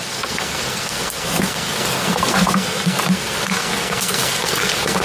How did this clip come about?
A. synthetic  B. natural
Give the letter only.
A